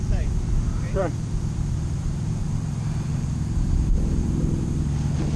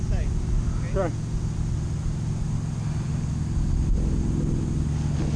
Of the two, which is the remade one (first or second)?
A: first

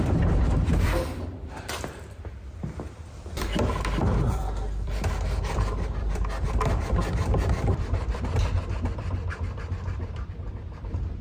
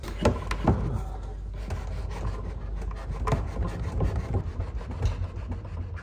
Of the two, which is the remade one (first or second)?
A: first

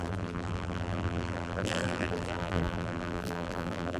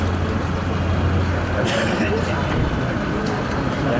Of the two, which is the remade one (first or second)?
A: first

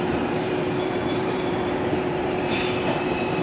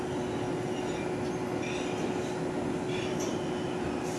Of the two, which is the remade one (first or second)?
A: first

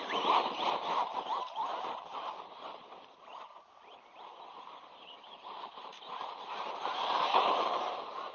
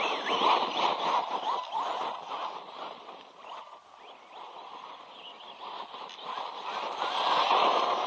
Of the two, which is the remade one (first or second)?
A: first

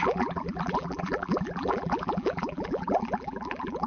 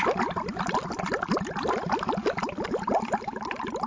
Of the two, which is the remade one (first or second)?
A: first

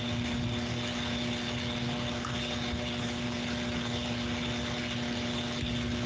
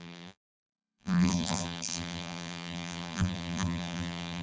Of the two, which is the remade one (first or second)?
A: second